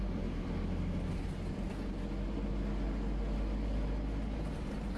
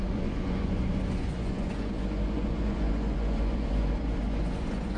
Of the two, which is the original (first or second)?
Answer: first